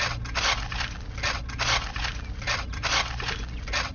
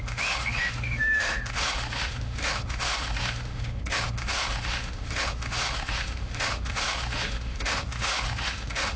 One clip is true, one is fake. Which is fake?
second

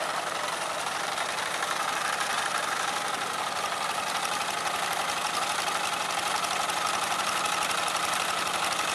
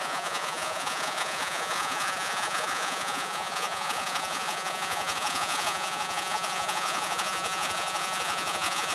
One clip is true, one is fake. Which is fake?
second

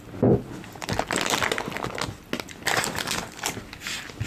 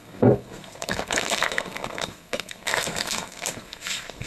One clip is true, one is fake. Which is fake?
second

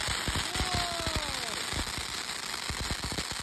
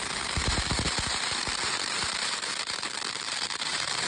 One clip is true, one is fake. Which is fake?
second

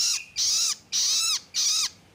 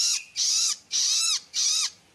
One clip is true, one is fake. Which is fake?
second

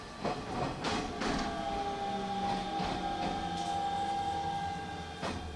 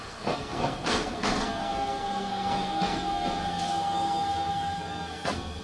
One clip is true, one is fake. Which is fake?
second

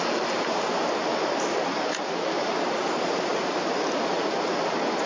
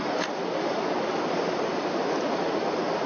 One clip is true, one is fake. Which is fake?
second